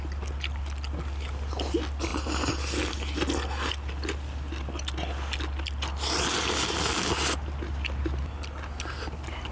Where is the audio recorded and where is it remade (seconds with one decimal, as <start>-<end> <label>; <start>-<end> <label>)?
0.0-9.5 recorded